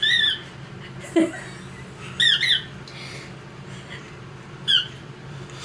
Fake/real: real